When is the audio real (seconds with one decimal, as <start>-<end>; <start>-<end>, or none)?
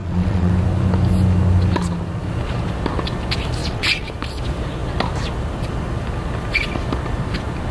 0.5-3.6; 4.1-7.7